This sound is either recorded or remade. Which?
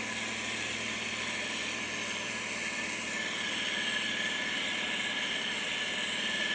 recorded